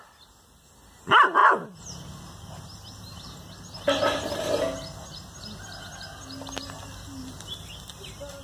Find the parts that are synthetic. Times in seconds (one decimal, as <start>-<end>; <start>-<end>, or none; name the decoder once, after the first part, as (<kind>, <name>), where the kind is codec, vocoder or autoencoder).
none